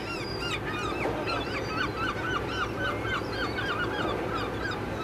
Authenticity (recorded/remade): recorded